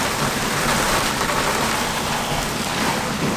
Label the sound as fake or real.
real